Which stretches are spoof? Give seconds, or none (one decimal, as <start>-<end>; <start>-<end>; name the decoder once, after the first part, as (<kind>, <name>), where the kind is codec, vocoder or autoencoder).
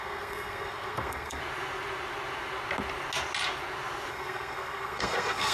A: 0.0-1.4 (codec, SNAC); 4.1-5.5